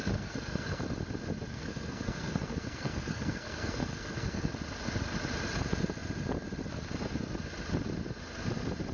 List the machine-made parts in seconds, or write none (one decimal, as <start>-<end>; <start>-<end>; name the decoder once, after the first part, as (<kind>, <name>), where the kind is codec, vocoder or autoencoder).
0.0-0.8 (codec, SNAC); 1.5-4.5